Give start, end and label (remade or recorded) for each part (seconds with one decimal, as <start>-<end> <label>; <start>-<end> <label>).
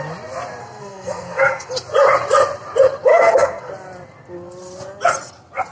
0.0-0.6 recorded; 0.6-1.7 remade; 1.7-3.1 recorded; 3.1-3.7 remade; 3.7-5.7 recorded